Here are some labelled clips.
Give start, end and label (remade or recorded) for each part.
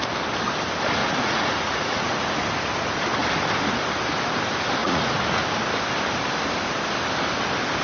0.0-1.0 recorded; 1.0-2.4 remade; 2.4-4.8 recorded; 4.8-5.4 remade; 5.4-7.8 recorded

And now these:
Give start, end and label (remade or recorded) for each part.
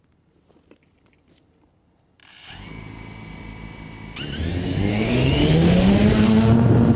0.0-4.9 recorded; 4.9-5.9 remade; 5.9-7.0 recorded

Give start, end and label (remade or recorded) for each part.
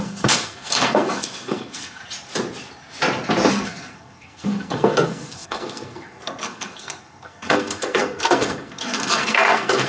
0.0-2.0 remade; 2.0-3.5 recorded; 3.5-9.9 remade